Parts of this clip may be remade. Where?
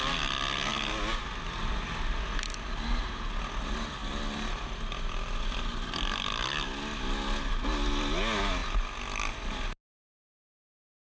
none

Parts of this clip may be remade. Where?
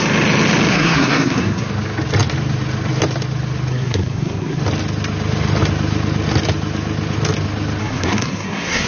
0.7-1.7; 3.7-4.6; 7.8-8.9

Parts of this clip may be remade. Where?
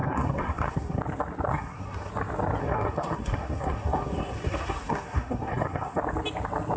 0.0-1.0; 1.5-2.1; 2.6-6.0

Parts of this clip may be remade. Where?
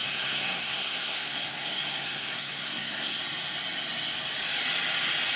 0.0-3.2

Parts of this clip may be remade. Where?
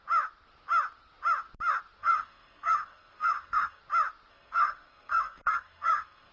2.0-3.8; 4.3-6.3